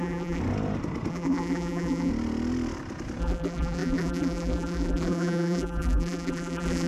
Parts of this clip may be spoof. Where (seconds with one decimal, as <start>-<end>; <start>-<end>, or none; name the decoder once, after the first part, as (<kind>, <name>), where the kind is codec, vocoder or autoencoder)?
0.0-0.4 (vocoder, BigVGAN v2); 1.1-2.1; 3.2-6.9

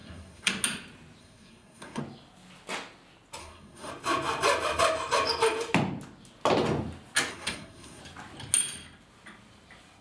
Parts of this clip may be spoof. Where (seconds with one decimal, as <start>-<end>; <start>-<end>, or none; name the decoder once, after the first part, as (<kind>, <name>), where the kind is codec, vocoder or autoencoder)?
0.0-0.5 (codec, SNAC); 1.2-2.0; 3.4-3.9; 7.3-8.0

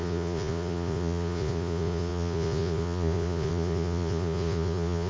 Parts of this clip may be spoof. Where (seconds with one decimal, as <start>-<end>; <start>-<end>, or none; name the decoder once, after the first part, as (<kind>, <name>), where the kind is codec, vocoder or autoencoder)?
0.0-5.1 (vocoder, Vocos)

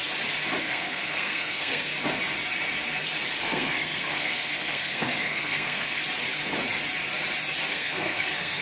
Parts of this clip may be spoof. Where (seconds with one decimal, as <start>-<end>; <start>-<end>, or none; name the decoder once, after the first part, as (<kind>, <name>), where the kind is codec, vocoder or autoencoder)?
0.6-1.9 (codec, SNAC); 3.4-6.0; 7.7-8.6

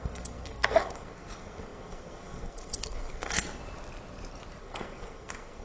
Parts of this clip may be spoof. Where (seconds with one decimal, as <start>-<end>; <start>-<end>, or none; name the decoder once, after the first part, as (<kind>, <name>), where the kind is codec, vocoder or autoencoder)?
0.0-3.6 (codec, SNAC); 4.6-5.6

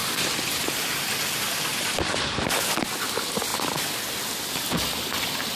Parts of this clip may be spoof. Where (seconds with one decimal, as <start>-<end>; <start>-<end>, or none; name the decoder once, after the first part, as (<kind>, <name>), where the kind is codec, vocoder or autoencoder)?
none

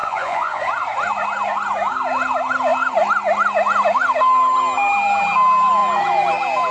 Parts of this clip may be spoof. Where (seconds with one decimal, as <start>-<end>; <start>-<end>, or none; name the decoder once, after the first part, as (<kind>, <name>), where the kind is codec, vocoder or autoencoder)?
0.0-0.6 (vocoder, Vocos)

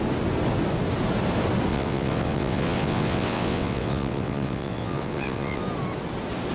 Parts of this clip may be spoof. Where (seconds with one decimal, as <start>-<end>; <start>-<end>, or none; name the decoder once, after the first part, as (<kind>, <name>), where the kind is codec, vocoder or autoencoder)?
1.7-5.6 (vocoder, WaveNeXt)